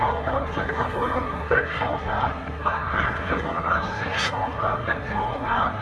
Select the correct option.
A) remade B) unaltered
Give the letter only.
A